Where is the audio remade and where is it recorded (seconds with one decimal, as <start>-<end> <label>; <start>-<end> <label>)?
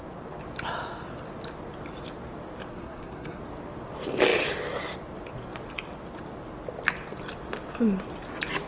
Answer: 0.0-2.7 recorded; 2.7-3.4 remade; 3.4-8.7 recorded